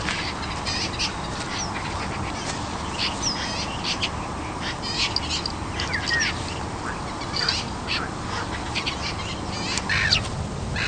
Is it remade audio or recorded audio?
recorded